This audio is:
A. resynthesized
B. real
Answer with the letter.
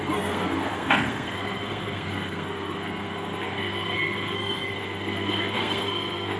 A